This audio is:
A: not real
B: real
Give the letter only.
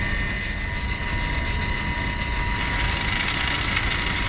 B